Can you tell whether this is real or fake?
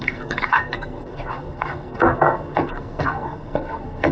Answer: fake